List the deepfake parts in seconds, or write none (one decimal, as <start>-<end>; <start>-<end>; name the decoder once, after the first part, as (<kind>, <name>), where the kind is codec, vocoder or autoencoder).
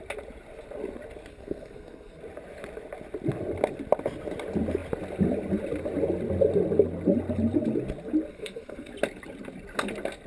1.3-2.2 (codec, SNAC); 8.3-8.9